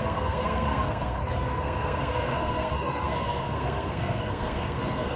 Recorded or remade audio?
remade